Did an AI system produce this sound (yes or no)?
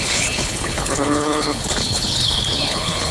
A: yes